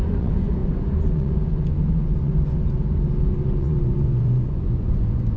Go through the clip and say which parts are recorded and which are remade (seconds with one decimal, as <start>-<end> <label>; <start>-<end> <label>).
0.0-5.4 remade